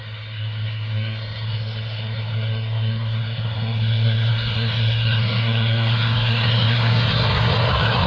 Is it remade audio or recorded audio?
remade